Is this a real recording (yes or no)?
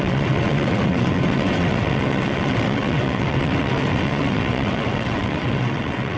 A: no